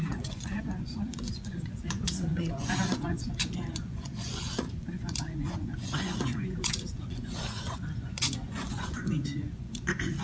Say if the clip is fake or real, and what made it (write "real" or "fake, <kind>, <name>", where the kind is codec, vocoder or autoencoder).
fake, vocoder, Vocos